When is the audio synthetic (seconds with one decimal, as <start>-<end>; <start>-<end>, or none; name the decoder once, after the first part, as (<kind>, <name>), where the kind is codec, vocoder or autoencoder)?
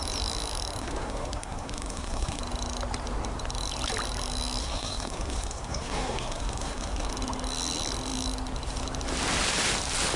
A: 0.8-2.4 (codec, SNAC); 4.6-7.1